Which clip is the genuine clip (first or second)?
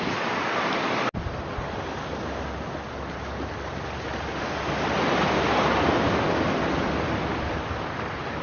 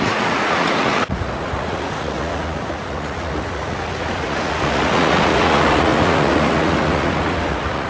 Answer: first